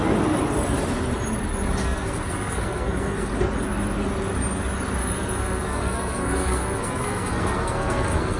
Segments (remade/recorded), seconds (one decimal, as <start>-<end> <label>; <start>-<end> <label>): 0.0-1.8 recorded; 1.8-3.3 remade; 3.3-5.0 recorded; 5.0-8.4 remade